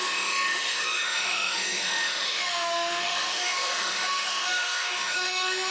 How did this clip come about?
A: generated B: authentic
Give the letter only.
A